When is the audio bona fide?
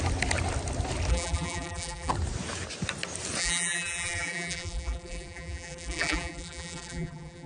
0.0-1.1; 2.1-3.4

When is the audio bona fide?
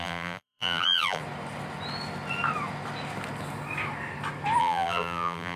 1.2-4.6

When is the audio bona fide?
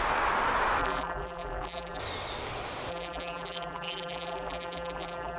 0.0-0.8; 2.0-2.9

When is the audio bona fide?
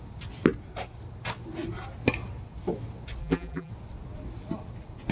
0.0-3.2; 3.7-5.1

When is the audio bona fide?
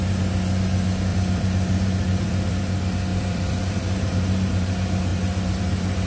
0.0-1.1; 2.6-3.1; 3.8-6.1